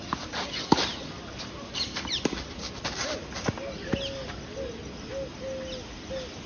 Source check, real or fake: real